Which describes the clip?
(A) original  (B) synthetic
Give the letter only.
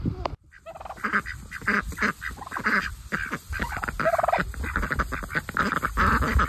A